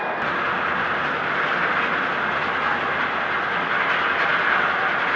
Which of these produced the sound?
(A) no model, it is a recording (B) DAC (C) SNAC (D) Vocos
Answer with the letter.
A